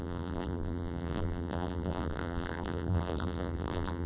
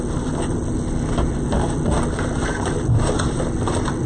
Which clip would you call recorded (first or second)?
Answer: second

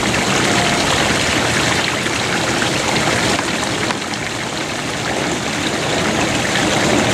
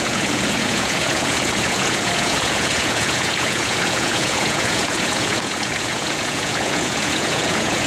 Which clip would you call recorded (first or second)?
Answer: first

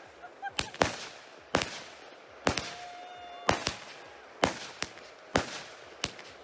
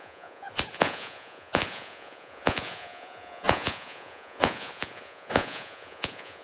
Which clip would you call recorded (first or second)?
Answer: first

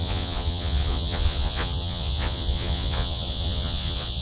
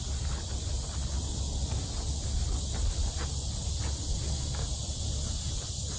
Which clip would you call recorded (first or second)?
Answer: second